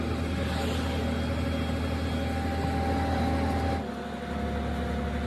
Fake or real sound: real